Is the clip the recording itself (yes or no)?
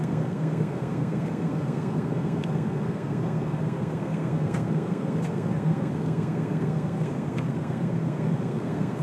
no